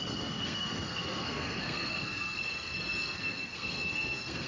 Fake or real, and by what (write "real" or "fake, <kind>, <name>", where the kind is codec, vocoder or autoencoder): fake, codec, SNAC